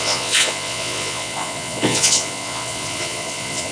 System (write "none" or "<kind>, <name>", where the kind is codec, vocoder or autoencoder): vocoder, Vocos